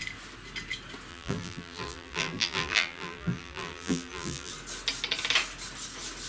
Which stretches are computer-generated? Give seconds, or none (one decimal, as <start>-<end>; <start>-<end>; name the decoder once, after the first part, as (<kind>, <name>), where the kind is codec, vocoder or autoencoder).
1.1-4.5 (vocoder, BigVGAN v2)